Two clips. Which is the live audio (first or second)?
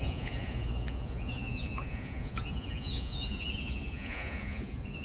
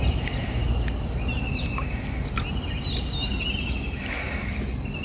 second